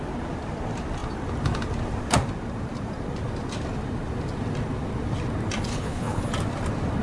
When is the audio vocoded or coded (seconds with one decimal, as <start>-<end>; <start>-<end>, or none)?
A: 5.7-6.2